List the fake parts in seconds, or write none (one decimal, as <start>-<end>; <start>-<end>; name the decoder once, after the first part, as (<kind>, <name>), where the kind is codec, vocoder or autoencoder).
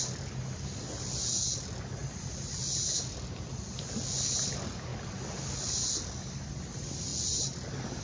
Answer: none